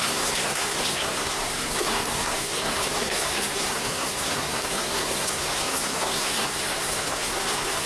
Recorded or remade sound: remade